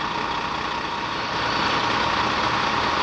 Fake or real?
real